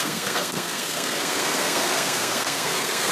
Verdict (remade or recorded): remade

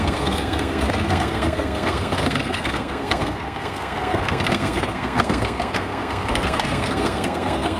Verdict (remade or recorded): remade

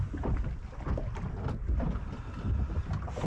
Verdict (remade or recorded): recorded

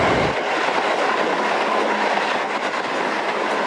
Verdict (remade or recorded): recorded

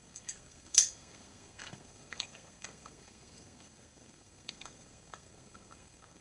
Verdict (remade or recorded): remade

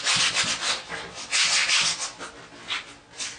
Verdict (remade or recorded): recorded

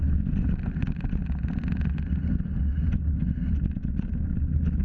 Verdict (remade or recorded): recorded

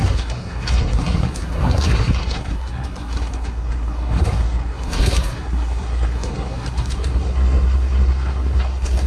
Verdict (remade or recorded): remade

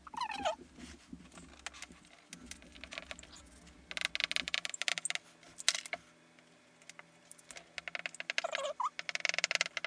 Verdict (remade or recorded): recorded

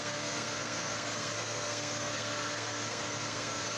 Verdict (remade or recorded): remade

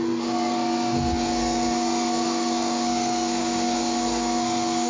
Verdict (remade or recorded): remade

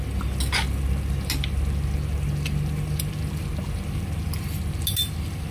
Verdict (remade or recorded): recorded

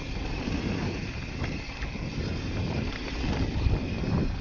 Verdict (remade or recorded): recorded